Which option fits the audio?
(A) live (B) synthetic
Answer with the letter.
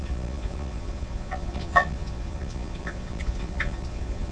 B